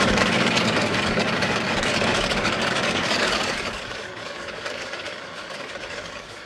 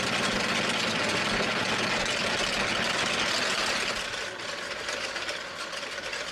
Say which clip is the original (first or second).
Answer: second